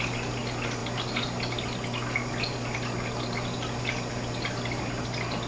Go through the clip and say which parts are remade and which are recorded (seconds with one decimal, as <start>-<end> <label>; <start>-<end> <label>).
0.0-5.5 recorded